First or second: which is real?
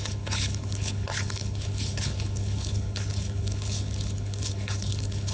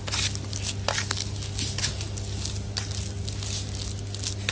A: second